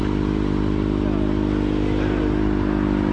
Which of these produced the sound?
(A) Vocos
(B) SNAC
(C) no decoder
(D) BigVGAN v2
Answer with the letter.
C